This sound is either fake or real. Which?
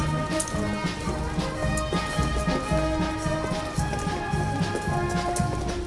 real